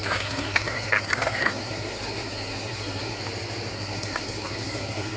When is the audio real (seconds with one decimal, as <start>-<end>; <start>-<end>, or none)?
3.2-3.7